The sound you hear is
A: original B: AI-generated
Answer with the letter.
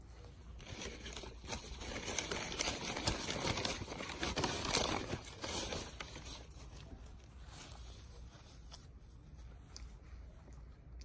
A